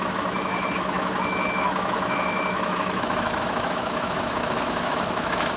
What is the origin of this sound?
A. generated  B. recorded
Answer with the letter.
A